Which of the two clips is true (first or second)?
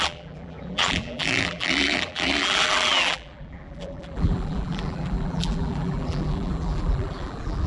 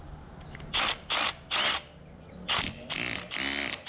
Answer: second